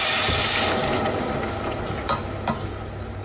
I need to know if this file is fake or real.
real